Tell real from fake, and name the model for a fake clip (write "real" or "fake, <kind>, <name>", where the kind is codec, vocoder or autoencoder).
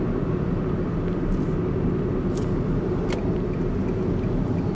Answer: real